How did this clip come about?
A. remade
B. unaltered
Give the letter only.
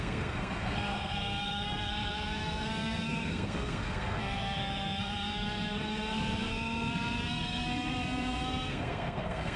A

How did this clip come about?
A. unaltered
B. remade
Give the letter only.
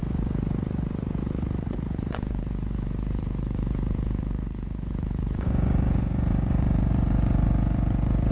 B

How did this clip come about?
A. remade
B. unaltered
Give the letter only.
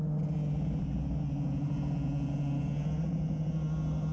B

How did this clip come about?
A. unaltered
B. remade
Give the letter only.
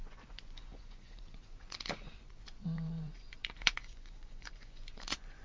B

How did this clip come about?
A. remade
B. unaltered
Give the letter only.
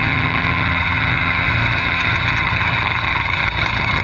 A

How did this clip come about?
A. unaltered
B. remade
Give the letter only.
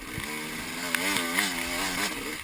A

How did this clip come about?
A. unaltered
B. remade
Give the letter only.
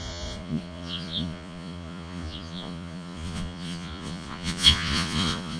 B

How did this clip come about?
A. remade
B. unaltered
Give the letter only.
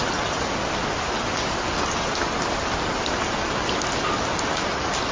B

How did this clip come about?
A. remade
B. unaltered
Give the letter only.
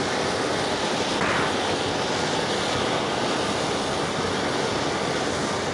B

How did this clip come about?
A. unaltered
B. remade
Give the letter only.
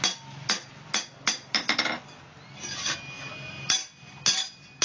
A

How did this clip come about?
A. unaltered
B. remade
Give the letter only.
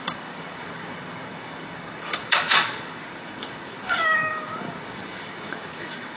B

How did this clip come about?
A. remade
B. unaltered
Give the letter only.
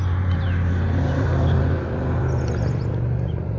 B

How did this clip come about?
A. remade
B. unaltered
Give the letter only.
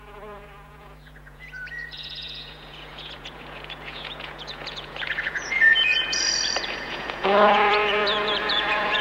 A